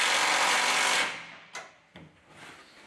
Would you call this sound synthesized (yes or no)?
no